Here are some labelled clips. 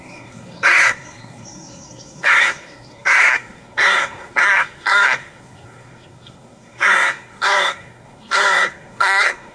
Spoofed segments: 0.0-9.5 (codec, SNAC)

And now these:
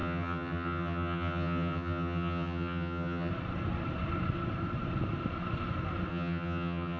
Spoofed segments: 0.0-3.3 (vocoder, HiFi-GAN); 6.1-7.0

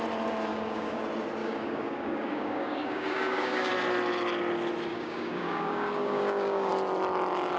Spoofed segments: 0.5-1.0 (codec, DAC); 1.4-3.7; 4.9-6.7

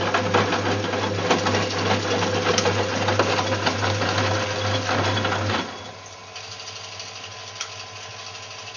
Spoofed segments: none

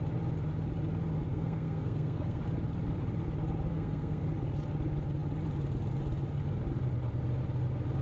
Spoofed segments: 1.3-2.4 (codec, SNAC); 3.7-4.2

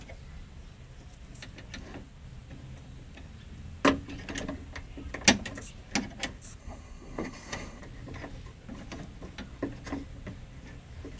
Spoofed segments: 6.6-7.8 (codec, SNAC)

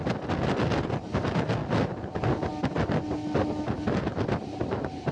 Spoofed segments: none

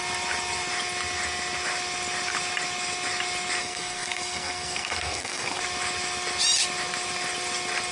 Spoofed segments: 3.6-5.6 (codec, SNAC)